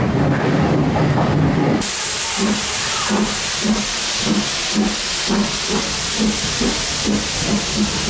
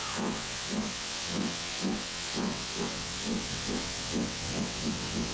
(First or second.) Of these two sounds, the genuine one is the first